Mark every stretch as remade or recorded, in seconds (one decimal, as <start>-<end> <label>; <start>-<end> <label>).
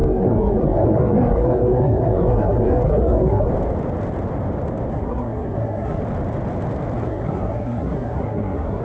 0.0-3.5 remade; 3.5-4.9 recorded; 4.9-6.0 remade; 6.0-7.0 recorded; 7.0-8.8 remade